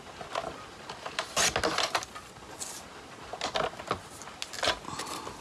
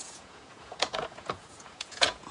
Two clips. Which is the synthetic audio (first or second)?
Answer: second